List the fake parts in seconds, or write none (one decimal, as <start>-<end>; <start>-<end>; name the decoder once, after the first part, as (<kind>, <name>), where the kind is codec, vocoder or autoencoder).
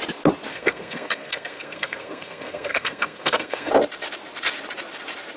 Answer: 0.5-3.7 (codec, SNAC)